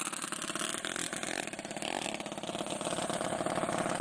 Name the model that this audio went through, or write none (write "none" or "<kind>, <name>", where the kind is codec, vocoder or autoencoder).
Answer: none